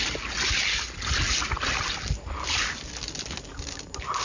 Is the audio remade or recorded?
recorded